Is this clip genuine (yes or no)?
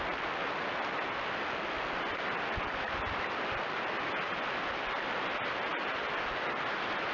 yes